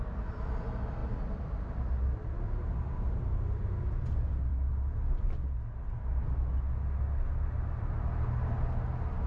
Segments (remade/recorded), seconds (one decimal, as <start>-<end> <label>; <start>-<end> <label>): 0.0-9.3 recorded